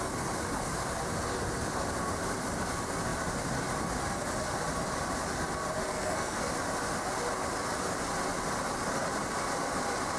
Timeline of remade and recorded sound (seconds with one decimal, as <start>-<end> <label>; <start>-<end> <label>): 0.0-5.9 recorded; 5.9-6.5 remade; 6.5-10.2 recorded